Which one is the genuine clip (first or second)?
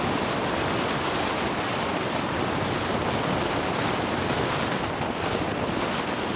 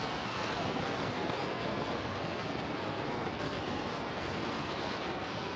first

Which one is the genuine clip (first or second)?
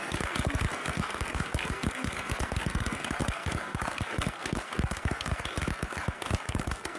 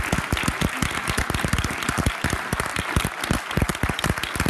second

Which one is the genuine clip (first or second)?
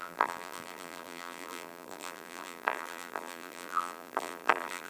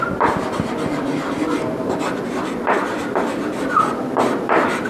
second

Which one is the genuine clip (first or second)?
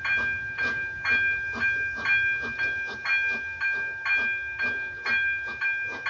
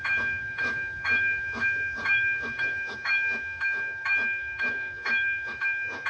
first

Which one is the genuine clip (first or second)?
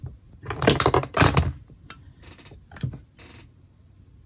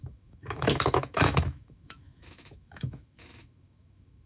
first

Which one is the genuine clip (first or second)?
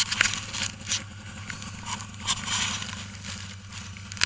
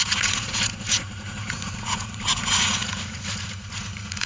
first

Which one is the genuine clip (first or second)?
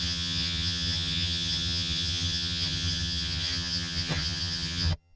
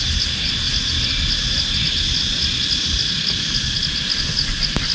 second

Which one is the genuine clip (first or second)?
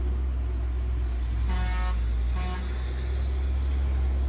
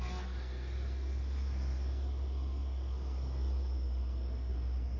first